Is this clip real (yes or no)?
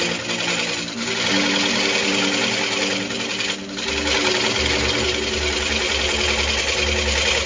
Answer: yes